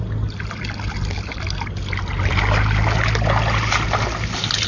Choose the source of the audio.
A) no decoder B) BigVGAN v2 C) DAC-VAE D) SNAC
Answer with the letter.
A